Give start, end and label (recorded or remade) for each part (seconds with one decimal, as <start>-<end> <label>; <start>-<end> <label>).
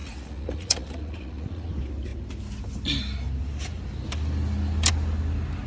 0.0-1.7 remade; 1.7-5.7 recorded